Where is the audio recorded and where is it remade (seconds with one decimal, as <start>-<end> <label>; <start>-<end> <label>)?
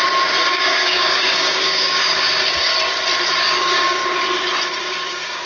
0.0-0.5 recorded; 0.5-2.7 remade; 2.7-3.4 recorded; 3.4-4.0 remade; 4.0-4.8 recorded; 4.8-5.5 remade